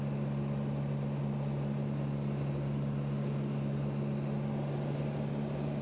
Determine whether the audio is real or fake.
real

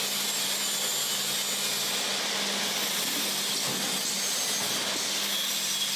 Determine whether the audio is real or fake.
real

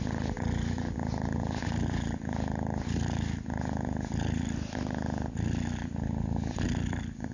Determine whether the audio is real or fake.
real